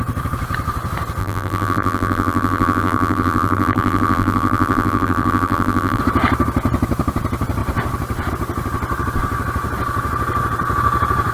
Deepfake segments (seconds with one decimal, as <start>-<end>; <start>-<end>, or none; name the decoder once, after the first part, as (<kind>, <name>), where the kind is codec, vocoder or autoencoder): 1.2-6.0 (vocoder, BigVGAN v2)